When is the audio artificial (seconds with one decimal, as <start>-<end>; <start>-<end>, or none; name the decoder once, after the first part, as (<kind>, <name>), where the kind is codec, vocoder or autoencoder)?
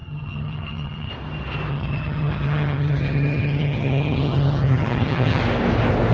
0.0-1.1 (vocoder, HiFi-GAN); 1.7-5.4